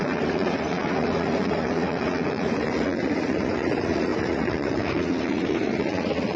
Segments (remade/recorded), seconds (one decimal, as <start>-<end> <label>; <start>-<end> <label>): 0.0-6.4 remade